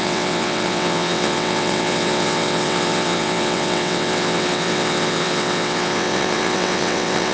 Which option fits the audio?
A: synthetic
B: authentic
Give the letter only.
A